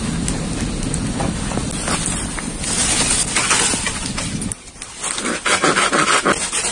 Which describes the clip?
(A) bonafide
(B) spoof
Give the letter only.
A